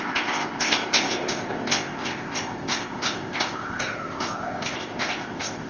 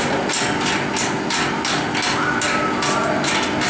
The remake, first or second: first